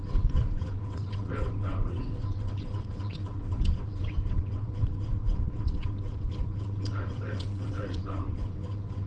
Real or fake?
fake